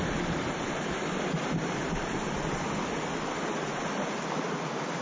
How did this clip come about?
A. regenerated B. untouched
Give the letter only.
B